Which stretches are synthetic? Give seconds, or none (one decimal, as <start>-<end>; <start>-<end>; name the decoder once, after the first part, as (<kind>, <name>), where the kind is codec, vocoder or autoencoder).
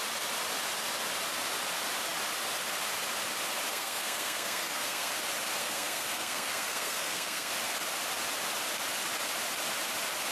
3.7-5.1 (codec, SNAC); 5.6-7.5